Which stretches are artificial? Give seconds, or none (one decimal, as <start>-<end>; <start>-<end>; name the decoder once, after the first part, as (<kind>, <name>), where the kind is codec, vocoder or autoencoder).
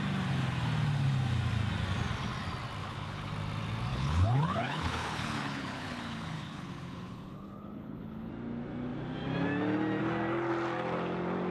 2.8-3.3 (codec, HILCodec); 3.9-8.3